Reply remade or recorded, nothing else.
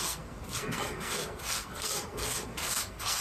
remade